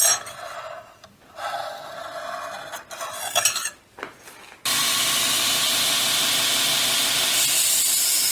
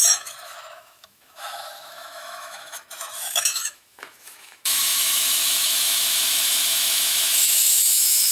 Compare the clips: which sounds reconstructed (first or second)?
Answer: second